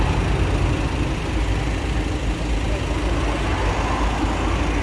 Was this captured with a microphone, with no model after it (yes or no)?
yes